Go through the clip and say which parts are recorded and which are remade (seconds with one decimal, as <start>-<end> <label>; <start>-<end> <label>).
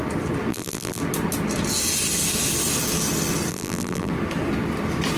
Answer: 0.0-0.5 recorded; 0.5-1.0 remade; 1.0-3.5 recorded; 3.5-4.1 remade; 4.1-5.2 recorded